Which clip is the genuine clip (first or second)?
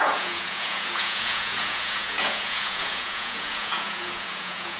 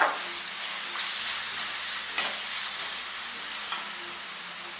second